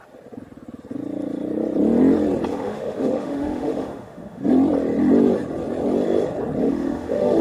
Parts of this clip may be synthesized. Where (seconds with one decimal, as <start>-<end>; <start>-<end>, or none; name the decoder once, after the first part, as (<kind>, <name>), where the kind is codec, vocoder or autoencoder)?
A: 2.5-4.4 (autoencoder, DAC-VAE); 6.6-7.4